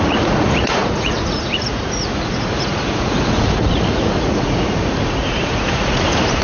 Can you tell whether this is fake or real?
fake